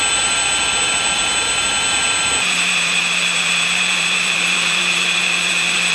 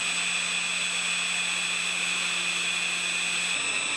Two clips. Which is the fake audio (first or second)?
first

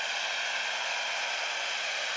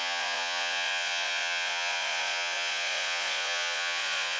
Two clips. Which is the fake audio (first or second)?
second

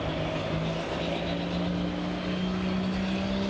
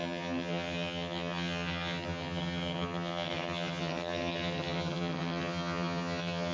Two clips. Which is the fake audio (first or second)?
second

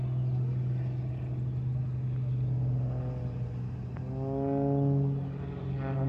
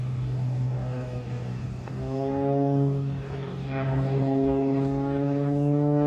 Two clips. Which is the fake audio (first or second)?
second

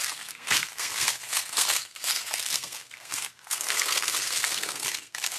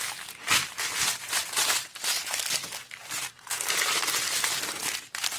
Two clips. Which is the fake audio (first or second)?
first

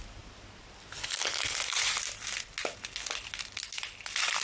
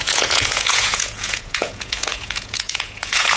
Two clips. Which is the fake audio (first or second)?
second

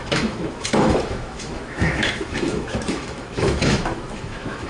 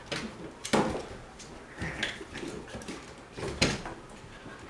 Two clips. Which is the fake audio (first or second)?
first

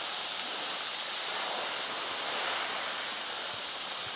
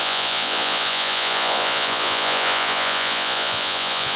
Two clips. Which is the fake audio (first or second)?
second